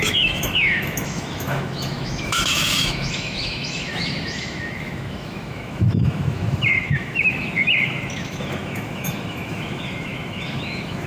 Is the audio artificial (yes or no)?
yes